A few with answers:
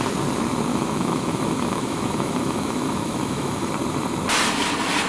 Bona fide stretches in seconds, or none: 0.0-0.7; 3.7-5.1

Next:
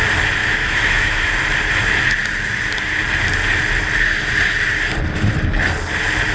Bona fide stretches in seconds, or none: 0.0-0.4; 1.3-6.3

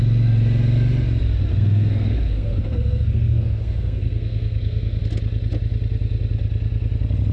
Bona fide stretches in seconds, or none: 0.0-1.5; 5.0-7.3

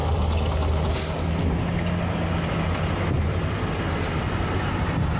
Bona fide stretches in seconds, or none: 0.0-5.2

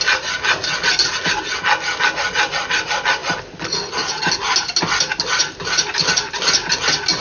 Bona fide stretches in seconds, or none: 0.0-7.2